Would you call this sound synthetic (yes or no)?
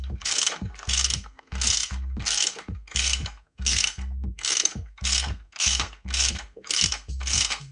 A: yes